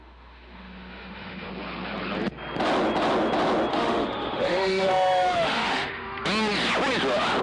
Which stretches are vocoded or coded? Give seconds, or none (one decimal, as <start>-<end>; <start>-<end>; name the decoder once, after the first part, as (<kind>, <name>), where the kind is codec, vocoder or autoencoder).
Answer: 0.0-1.5 (autoencoder, DAC-VAE); 3.7-6.2